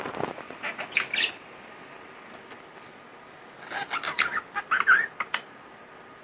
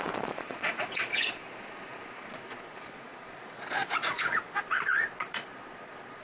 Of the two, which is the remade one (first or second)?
second